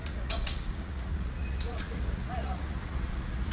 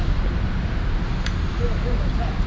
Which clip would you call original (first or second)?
second